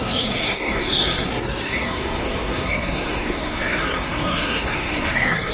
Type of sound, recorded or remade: remade